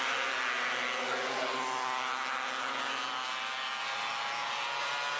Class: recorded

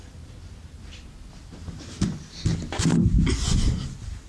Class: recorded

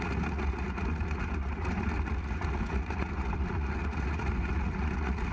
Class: remade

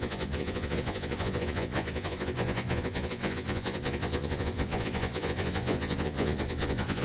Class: remade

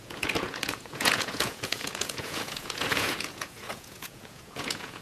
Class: remade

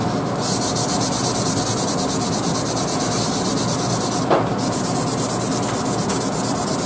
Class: recorded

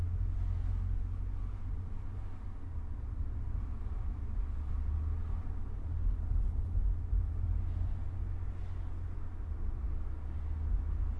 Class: recorded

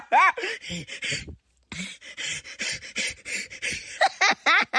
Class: recorded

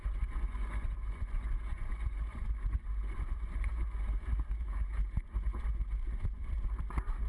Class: remade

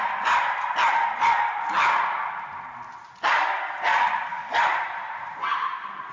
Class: recorded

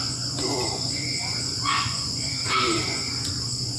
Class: remade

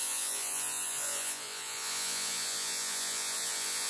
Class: remade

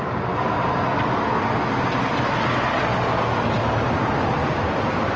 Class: recorded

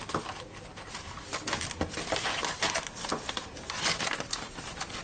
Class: recorded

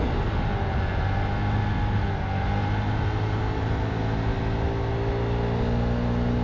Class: recorded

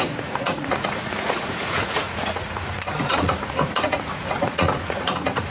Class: remade